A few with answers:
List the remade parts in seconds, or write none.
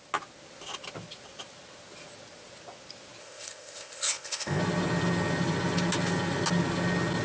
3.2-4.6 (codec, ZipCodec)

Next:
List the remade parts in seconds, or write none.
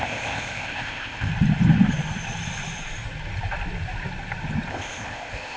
0.0-1.3 (codec, ZipCodec); 4.7-5.6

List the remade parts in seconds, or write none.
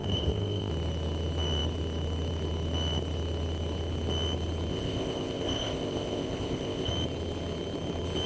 0.0-0.7 (codec, ZipCodec); 4.7-6.9